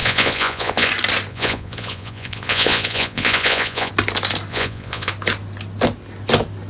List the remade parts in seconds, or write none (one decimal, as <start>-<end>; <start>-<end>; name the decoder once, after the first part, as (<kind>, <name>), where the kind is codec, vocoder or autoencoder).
0.0-0.9 (vocoder, Vocos); 1.3-3.9; 4.5-5.1